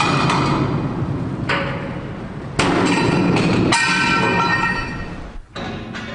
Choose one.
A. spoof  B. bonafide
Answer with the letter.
B